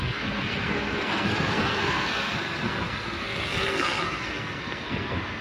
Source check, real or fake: fake